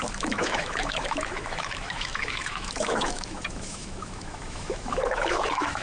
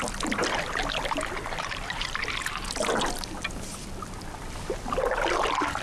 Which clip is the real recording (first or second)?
second